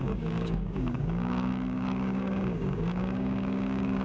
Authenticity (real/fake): fake